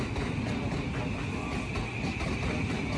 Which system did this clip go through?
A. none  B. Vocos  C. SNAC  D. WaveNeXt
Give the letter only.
A